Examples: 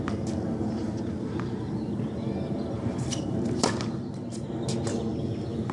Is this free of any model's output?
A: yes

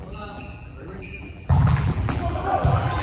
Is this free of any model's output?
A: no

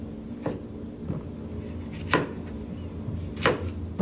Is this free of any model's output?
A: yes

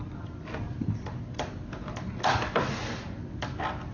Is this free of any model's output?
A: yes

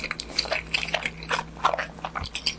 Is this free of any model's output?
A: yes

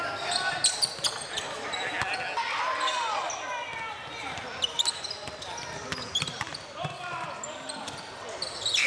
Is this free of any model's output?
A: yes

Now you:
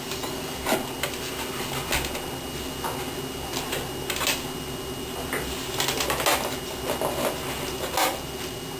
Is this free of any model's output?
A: yes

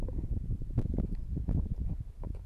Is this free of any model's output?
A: yes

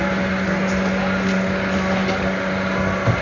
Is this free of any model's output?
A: yes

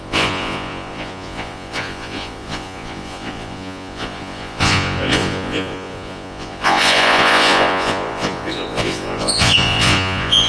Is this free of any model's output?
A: no